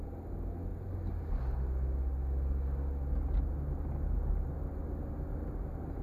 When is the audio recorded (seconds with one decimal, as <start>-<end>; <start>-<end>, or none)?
0.0-6.0